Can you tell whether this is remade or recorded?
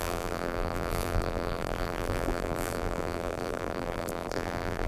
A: remade